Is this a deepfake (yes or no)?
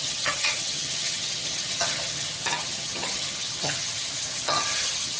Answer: yes